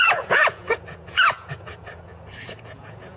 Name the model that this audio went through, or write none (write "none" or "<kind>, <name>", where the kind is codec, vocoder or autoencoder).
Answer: vocoder, Vocos